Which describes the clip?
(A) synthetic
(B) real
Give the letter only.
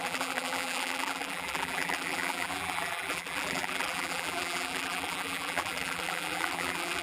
A